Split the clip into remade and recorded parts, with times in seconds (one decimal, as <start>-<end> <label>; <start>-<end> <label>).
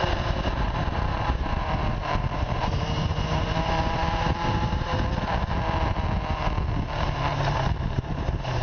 0.0-4.9 remade; 4.9-7.0 recorded; 7.0-8.6 remade